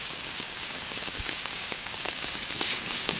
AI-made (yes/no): yes